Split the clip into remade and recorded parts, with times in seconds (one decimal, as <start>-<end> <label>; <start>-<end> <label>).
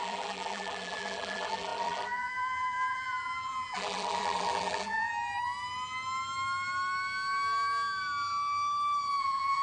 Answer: 0.0-5.1 remade; 5.1-9.2 recorded; 9.2-9.6 remade